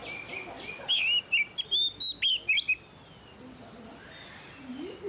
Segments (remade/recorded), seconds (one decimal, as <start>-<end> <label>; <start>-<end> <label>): 0.0-5.1 recorded